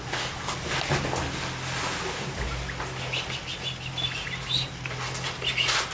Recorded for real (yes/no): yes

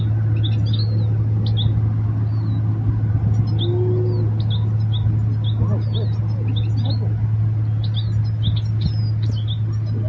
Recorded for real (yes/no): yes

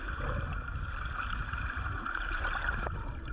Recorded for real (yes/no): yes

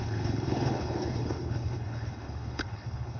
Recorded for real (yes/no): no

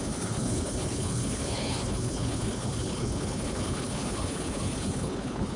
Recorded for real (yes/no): no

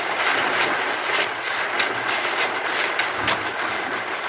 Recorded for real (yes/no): yes